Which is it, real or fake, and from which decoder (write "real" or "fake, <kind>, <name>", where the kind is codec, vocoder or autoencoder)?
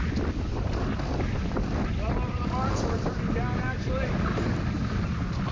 real